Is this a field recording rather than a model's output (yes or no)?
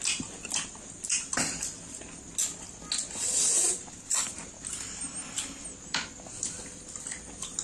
yes